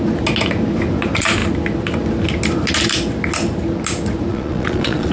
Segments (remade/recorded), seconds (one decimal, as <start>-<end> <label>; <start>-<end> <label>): 0.0-4.3 recorded; 4.3-5.1 remade